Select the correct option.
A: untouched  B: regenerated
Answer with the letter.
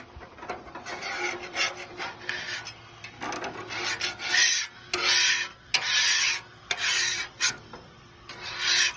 A